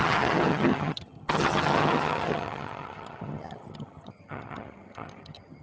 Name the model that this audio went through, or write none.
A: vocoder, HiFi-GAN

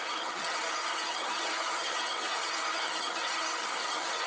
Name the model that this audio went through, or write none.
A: vocoder, HiFi-GAN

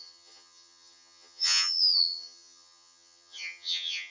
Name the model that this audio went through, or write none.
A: vocoder, HiFi-GAN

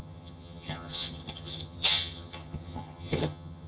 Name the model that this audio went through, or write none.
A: vocoder, HiFi-GAN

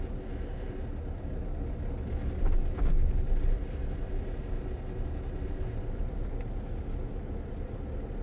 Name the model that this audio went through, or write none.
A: none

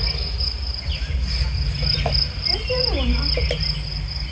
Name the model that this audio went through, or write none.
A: none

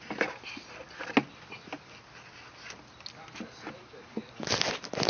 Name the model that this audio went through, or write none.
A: none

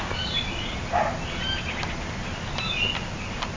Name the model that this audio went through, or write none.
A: none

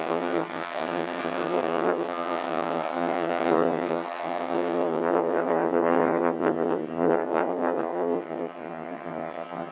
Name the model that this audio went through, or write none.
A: vocoder, HiFi-GAN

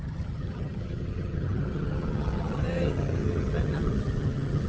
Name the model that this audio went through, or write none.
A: vocoder, HiFi-GAN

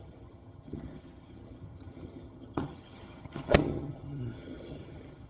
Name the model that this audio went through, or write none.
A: vocoder, HiFi-GAN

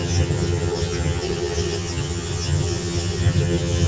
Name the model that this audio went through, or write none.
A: vocoder, HiFi-GAN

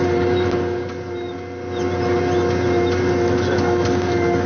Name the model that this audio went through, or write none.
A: none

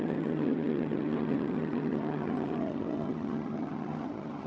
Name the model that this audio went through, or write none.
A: vocoder, HiFi-GAN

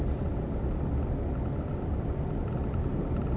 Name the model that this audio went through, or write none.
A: none